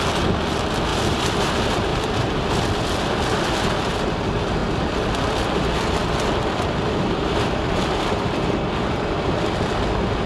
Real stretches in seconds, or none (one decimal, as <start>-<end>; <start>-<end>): 0.0-0.9; 1.4-1.9; 4.1-4.6; 5.6-10.3

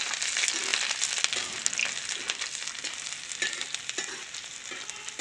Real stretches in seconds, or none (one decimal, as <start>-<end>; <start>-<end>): 0.0-5.2

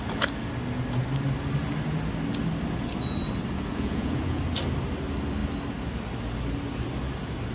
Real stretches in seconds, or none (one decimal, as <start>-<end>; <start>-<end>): 0.0-3.7; 4.4-7.5

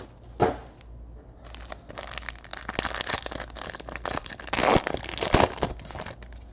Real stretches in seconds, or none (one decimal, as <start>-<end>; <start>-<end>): 0.0-6.5

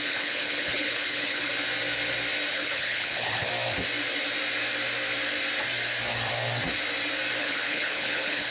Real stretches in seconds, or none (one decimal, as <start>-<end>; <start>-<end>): 1.5-2.5; 3.5-7.4